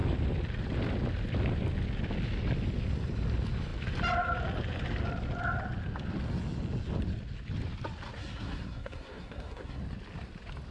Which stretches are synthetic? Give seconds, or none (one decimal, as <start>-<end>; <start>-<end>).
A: 8.2-9.8